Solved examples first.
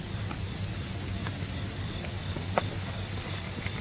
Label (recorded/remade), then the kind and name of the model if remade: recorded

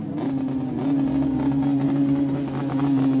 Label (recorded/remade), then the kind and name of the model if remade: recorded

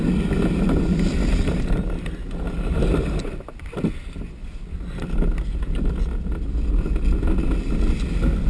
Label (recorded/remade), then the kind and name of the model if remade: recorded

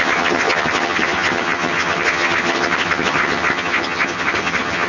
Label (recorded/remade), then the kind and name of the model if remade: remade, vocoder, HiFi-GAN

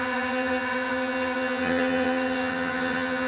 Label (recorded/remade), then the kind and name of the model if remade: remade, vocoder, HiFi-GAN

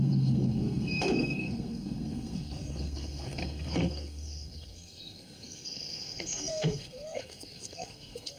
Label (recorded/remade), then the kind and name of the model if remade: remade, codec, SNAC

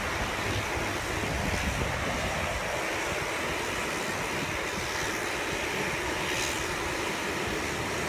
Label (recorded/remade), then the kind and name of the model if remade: recorded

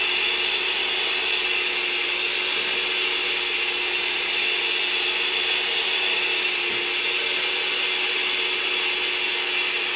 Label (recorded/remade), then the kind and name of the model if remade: recorded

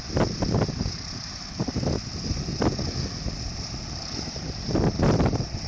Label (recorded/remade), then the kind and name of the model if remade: recorded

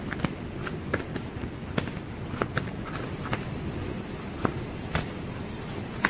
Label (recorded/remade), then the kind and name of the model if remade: recorded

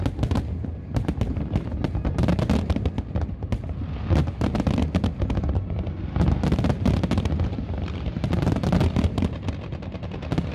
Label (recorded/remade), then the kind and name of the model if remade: recorded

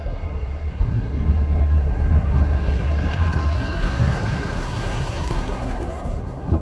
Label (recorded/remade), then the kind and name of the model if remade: remade, codec, SNAC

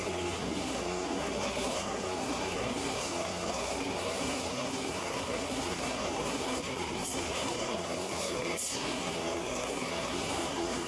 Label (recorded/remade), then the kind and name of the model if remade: remade, codec, SNAC